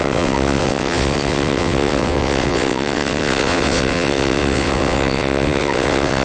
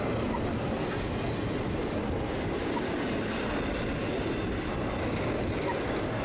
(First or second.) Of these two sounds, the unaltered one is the second